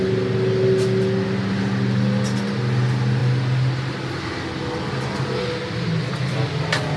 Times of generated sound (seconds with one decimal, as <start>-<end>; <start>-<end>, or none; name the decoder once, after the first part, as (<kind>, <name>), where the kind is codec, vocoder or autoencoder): none